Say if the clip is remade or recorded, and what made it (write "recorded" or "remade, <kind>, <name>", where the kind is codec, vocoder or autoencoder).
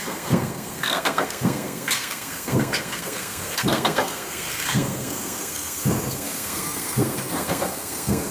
remade, codec, SNAC